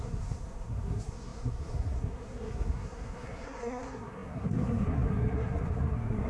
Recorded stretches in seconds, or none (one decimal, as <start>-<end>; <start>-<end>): none